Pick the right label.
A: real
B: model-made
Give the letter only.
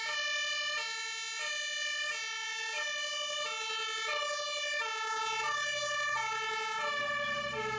A